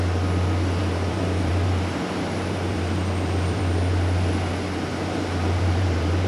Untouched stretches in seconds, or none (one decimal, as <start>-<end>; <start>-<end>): 0.0-0.8; 3.6-4.9